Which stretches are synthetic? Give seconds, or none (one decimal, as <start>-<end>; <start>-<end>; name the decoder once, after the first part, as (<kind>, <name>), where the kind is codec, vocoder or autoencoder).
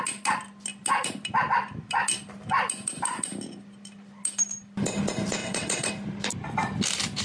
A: 5.4-5.9 (vocoder, WaveNeXt)